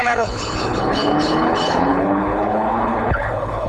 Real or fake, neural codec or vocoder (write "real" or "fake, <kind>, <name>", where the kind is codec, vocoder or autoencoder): fake, codec, HILCodec